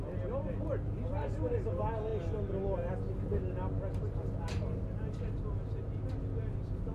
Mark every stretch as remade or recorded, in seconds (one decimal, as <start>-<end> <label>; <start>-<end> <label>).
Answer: 0.0-6.9 recorded